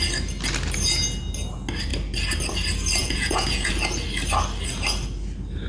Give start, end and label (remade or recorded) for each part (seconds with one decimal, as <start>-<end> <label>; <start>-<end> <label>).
0.0-3.0 recorded; 3.0-3.7 remade; 3.7-5.7 recorded

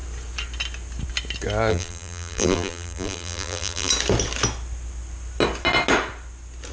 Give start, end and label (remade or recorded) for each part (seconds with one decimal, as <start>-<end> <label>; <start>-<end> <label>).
0.0-1.7 recorded; 1.7-3.9 remade; 3.9-6.7 recorded

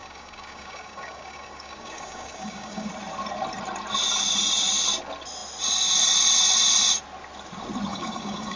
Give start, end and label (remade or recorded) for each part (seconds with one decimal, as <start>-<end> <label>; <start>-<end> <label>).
0.0-2.9 remade; 2.9-7.9 recorded; 7.9-8.6 remade

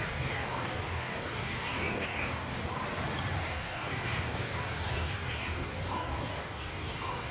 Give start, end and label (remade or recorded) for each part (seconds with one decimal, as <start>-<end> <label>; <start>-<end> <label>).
0.0-2.6 remade; 2.6-3.4 recorded; 3.4-7.3 remade

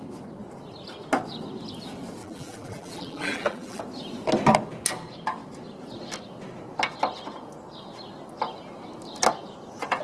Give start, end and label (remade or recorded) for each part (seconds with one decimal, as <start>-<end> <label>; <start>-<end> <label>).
0.0-2.2 recorded; 2.2-3.8 remade; 3.8-10.0 recorded

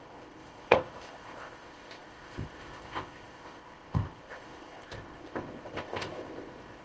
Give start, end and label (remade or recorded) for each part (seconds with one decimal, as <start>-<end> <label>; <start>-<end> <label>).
0.0-6.8 remade

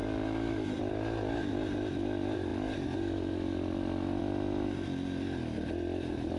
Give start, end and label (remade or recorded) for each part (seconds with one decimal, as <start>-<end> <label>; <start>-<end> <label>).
0.0-0.9 remade; 0.9-6.4 recorded